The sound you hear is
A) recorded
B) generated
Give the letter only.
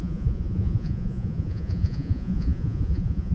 B